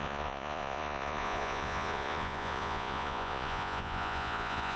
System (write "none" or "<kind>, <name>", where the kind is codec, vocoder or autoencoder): vocoder, Vocos